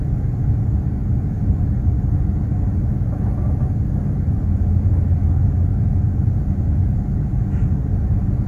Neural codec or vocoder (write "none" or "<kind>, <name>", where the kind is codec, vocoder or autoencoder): none